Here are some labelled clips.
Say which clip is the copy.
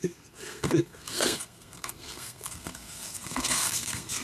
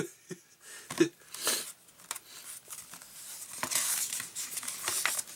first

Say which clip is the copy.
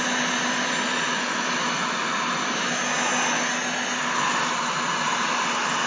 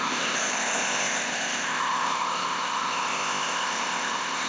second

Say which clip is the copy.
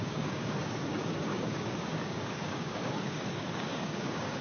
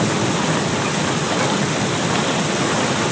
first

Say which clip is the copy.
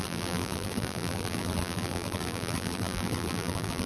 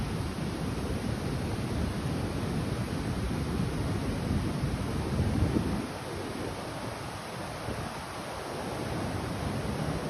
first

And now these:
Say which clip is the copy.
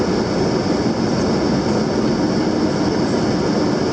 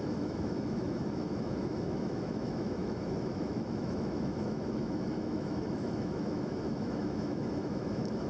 second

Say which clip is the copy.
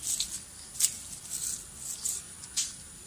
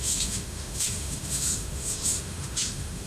second